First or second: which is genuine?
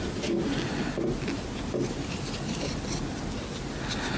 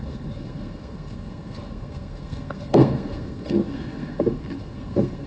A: first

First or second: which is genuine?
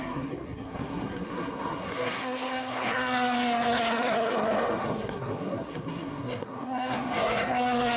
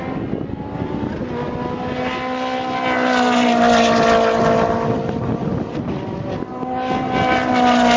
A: second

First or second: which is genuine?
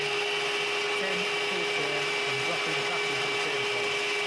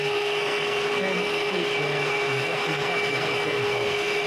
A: first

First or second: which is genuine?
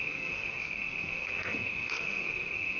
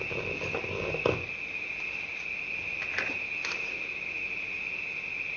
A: second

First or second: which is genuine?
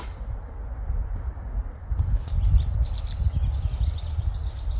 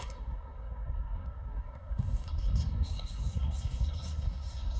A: first